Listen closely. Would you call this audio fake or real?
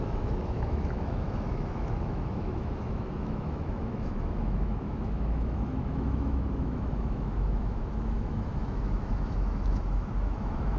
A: fake